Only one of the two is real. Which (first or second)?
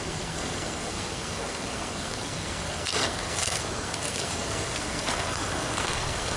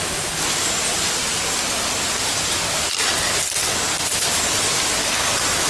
second